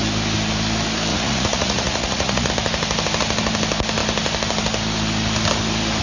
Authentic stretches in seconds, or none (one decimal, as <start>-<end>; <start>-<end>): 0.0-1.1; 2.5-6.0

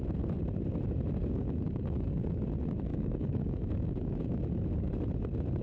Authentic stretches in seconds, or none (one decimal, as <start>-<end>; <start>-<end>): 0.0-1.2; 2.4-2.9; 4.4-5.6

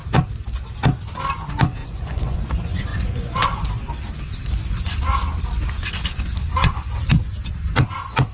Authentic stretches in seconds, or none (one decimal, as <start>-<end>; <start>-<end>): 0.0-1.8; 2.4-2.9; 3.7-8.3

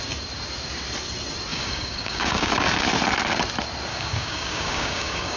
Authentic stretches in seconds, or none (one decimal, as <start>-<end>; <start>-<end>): 0.0-1.5; 2.5-3.9

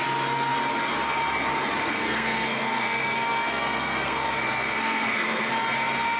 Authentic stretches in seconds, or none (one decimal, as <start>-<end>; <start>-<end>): 0.0-1.8; 5.5-6.2

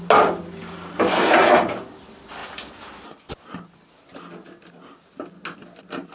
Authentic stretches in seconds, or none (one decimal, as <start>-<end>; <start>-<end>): 0.0-6.1